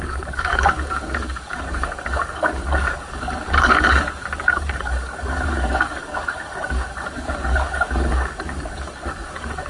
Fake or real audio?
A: fake